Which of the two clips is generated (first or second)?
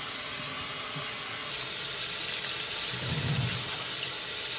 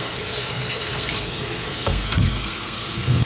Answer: second